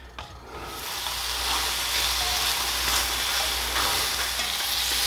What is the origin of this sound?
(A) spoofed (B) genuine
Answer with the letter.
B